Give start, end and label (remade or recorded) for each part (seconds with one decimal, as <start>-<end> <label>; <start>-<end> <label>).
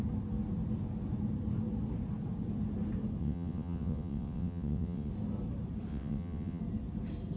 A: 0.0-3.2 recorded; 3.2-5.1 remade; 5.1-5.9 recorded; 5.9-6.6 remade; 6.6-7.4 recorded